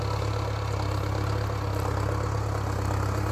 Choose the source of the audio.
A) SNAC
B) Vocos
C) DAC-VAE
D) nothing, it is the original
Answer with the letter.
D